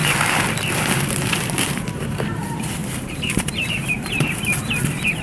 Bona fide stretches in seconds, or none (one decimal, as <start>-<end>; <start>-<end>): 0.0-0.7